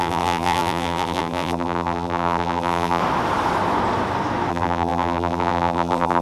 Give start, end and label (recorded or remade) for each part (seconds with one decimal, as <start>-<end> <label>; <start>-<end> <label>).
0.0-3.0 remade; 3.0-4.5 recorded; 4.5-6.2 remade

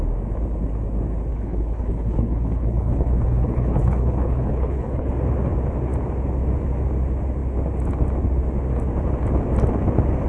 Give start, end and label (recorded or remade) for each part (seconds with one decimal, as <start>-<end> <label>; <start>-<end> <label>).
0.0-1.3 recorded; 1.3-5.1 remade; 5.1-10.3 recorded

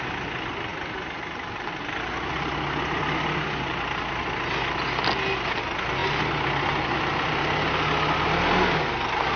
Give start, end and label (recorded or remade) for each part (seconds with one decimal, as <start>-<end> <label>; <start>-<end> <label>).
0.0-9.4 recorded

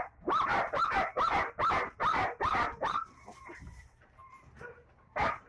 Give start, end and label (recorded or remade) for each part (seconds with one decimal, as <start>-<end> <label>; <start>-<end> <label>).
0.0-5.5 recorded